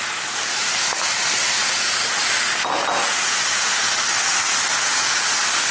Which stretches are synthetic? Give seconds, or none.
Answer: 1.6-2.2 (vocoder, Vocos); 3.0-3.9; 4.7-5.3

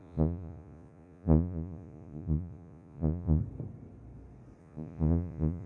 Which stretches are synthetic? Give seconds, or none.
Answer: 0.0-3.4 (vocoder, Vocos); 4.6-5.7

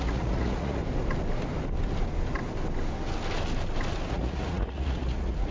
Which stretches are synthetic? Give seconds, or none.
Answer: 0.0-0.8 (vocoder, Vocos); 4.1-5.5

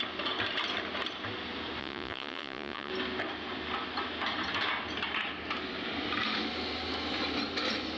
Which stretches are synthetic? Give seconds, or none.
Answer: 1.8-2.9 (vocoder, Vocos)